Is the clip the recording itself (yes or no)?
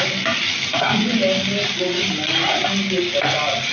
yes